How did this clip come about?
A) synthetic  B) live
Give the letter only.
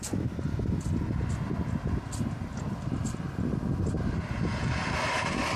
B